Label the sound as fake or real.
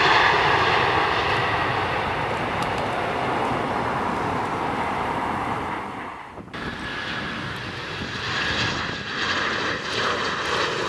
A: real